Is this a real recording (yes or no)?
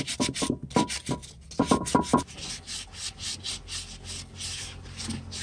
yes